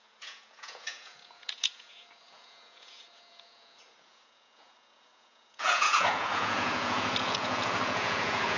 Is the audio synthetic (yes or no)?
yes